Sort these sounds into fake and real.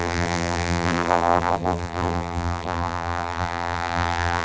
fake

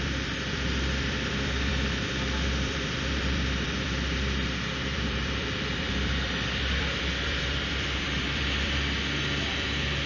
fake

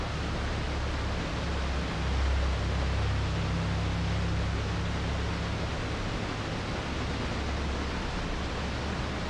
real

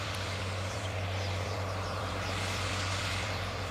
fake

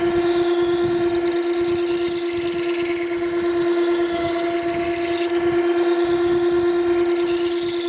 real